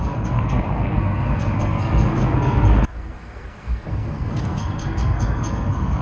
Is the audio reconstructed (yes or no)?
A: yes